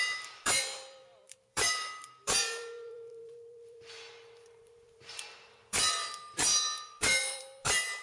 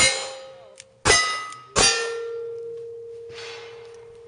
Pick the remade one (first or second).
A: first